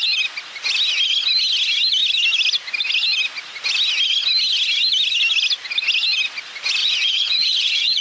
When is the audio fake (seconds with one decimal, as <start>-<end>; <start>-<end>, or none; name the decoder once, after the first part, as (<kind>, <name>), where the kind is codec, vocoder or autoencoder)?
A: 6.8-8.0 (vocoder, Vocos)